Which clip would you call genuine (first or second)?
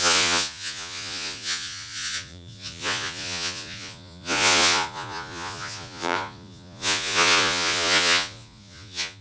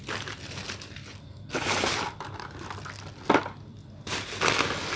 second